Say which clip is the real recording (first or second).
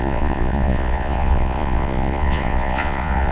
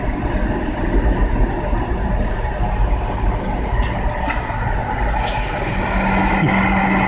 second